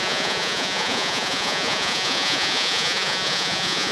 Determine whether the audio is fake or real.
fake